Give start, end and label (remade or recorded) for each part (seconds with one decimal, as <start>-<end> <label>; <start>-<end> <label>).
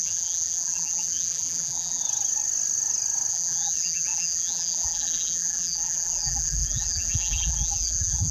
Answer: 0.0-2.0 remade; 2.0-3.3 recorded; 3.3-8.3 remade